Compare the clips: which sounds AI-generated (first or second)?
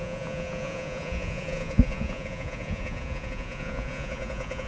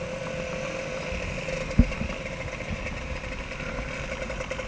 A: first